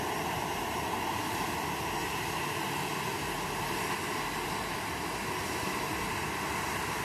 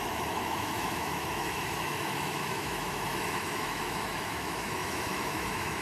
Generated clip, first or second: second